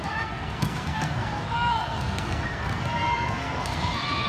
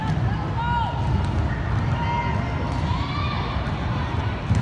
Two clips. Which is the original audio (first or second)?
second